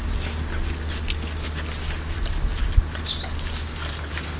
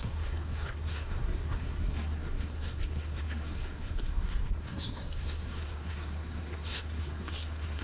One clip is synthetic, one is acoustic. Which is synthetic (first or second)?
second